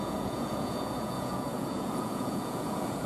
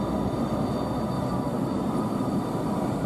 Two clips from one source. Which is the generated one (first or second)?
first